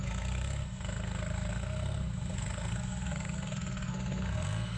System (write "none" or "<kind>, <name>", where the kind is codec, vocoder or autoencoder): codec, SNAC